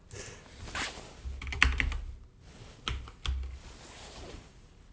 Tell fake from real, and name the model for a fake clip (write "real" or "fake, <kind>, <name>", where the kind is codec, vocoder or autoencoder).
real